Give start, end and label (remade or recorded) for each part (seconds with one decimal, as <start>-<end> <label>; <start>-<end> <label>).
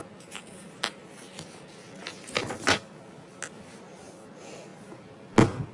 0.0-5.7 recorded